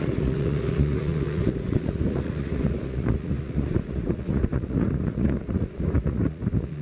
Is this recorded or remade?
remade